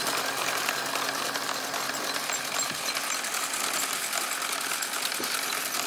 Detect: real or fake real